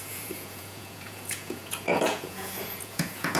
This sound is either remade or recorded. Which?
remade